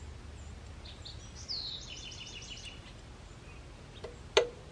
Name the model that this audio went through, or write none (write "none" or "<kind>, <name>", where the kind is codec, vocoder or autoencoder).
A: none